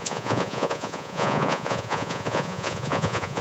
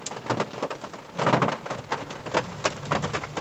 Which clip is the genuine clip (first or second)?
second